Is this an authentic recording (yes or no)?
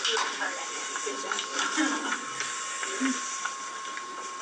yes